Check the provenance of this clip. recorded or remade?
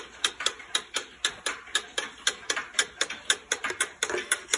remade